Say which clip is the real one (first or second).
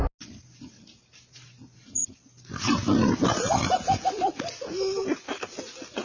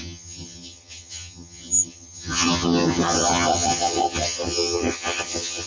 first